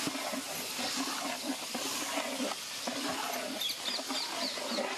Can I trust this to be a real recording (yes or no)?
yes